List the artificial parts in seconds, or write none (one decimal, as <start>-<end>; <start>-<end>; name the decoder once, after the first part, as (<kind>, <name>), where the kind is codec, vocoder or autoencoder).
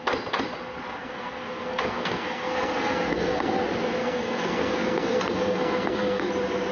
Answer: 1.0-3.5 (codec, SNAC); 4.0-6.3